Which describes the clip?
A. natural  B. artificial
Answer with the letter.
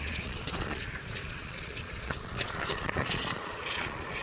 B